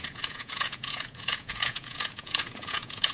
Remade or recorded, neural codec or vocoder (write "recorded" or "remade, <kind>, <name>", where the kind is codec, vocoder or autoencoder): remade, vocoder, Vocos